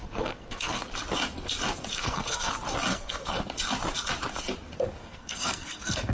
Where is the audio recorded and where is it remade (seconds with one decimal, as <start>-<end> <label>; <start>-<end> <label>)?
0.0-0.8 remade; 0.8-1.9 recorded; 1.9-2.5 remade; 2.5-2.9 recorded; 2.9-3.4 remade; 3.4-5.0 recorded; 5.0-6.1 remade